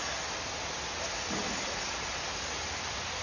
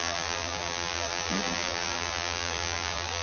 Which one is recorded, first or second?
first